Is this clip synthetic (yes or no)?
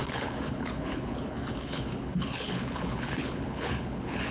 yes